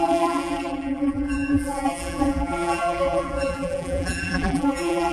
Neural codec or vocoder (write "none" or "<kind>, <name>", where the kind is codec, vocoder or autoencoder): vocoder, BigVGAN v2